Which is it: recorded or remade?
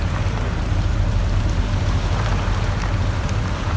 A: remade